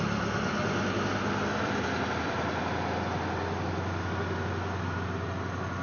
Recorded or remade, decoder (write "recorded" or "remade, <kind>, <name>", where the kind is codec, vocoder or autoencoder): recorded